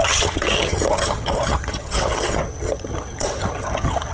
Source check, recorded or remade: remade